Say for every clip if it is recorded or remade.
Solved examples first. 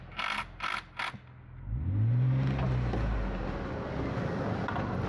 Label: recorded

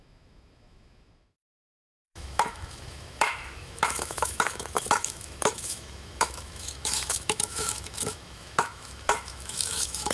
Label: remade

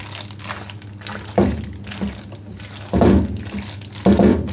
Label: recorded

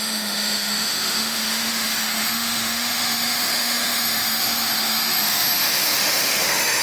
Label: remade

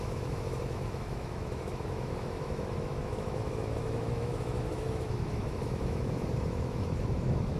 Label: remade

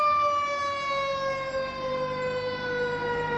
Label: recorded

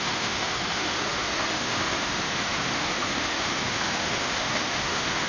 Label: remade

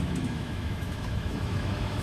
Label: remade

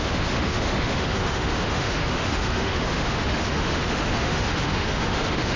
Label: remade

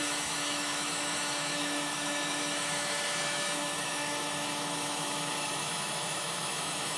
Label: remade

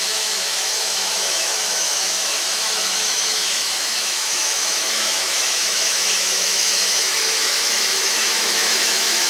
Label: remade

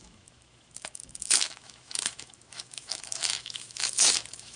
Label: remade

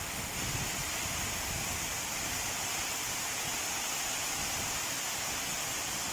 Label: recorded